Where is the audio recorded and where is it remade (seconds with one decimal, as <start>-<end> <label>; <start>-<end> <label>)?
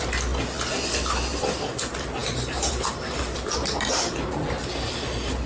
0.0-1.3 recorded; 1.3-4.5 remade; 4.5-5.5 recorded